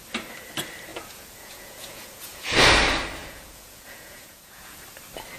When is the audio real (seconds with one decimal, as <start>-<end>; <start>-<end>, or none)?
0.0-0.9; 2.5-3.2; 4.8-5.4